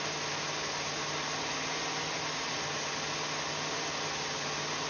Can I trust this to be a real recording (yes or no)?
yes